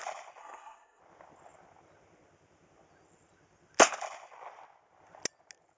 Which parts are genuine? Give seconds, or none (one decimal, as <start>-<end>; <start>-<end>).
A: 0.0-0.4; 1.0-5.8